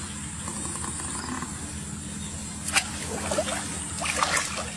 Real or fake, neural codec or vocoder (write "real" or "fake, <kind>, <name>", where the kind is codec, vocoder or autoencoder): real